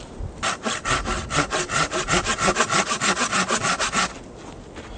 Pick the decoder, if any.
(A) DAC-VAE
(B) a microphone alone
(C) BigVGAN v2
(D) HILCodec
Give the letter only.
B